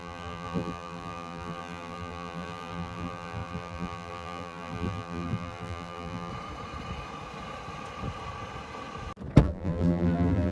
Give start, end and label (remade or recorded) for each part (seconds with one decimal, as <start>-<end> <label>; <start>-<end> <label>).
0.0-6.3 remade; 6.3-9.4 recorded; 9.4-10.5 remade